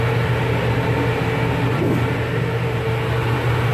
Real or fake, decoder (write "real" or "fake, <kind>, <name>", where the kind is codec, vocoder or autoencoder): real